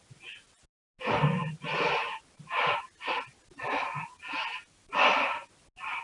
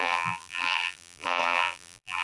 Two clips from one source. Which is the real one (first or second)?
first